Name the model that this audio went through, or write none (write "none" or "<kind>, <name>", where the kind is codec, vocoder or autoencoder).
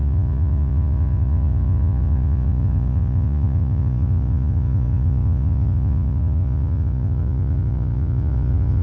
vocoder, Vocos